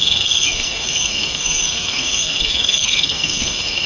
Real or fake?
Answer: fake